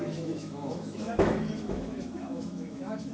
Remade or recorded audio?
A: remade